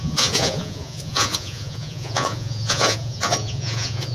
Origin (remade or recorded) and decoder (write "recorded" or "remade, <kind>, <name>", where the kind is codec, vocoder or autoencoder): remade, vocoder, Vocos